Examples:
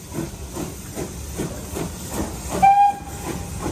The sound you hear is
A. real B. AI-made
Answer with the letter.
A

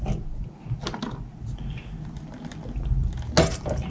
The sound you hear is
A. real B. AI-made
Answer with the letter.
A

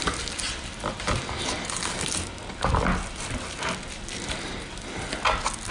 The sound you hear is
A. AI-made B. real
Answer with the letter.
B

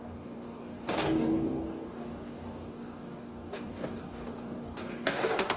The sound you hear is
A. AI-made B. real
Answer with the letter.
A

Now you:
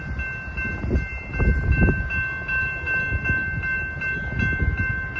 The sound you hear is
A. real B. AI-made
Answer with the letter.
A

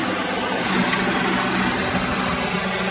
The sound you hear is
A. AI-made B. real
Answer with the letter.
B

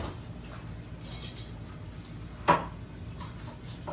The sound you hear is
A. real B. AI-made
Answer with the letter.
A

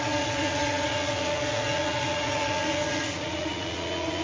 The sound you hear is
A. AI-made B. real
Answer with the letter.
A